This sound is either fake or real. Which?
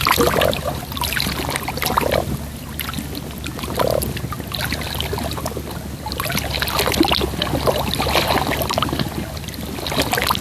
real